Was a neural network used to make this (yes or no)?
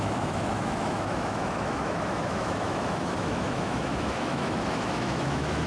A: yes